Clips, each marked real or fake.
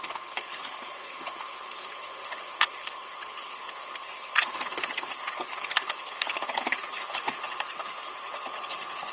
fake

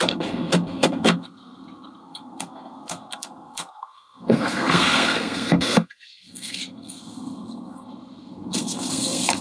fake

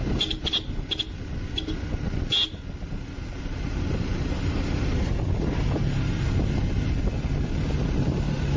real